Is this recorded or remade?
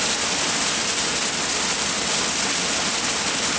recorded